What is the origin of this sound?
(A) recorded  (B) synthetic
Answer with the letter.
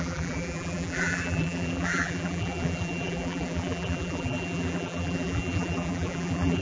B